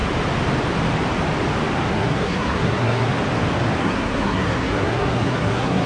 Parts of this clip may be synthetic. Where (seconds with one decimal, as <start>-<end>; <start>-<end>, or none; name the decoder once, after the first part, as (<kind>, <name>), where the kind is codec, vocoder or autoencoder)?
1.9-3.1 (codec, SNAC); 3.8-5.9